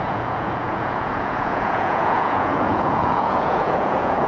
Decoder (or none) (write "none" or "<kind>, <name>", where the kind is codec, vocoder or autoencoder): vocoder, Vocos